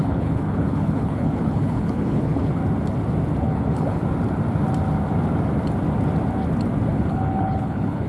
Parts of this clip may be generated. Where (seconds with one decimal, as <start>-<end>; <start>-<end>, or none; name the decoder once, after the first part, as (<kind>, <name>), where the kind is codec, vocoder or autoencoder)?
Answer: 0.0-2.6 (codec, HILCodec); 3.4-4.0; 6.9-8.1